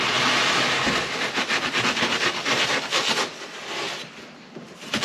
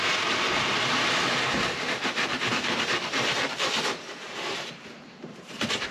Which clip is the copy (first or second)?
second